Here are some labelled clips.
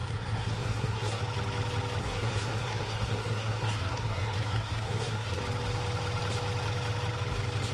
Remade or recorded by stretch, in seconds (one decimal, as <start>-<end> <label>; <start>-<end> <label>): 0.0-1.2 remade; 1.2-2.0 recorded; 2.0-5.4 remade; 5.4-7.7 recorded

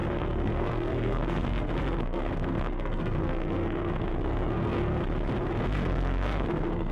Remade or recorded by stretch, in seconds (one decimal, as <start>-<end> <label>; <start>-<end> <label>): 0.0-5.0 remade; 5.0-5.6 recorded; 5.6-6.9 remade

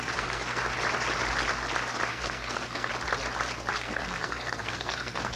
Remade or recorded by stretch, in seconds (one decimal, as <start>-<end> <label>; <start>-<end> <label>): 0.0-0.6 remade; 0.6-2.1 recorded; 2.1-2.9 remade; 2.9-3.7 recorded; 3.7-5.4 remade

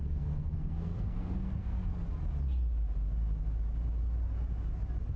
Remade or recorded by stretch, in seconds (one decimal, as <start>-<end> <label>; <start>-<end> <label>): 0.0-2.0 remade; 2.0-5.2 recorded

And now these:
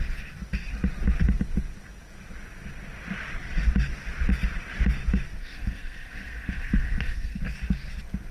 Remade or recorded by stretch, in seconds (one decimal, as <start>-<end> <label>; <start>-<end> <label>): 0.0-5.4 recorded; 5.4-7.4 remade; 7.4-8.3 recorded

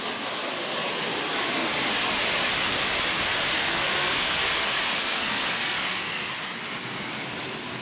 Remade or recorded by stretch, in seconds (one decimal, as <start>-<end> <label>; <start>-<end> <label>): 0.0-3.5 recorded; 3.5-6.3 remade; 6.3-7.8 recorded